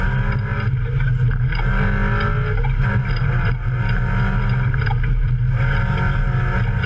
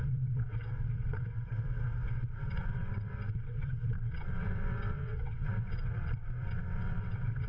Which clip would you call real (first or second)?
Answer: first